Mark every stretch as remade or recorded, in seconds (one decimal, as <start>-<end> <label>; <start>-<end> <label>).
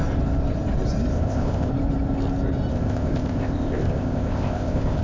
0.0-1.1 recorded; 1.1-1.7 remade; 1.7-2.7 recorded; 2.7-5.0 remade